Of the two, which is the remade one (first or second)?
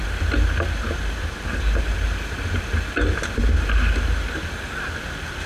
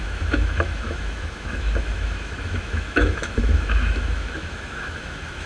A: second